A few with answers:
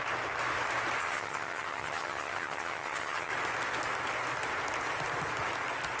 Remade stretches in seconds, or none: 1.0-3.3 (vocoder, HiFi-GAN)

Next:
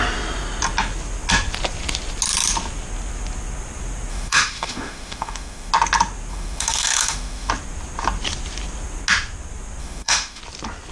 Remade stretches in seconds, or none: 4.1-5.7 (autoencoder, DAC-VAE); 6.3-7.5; 9.8-10.4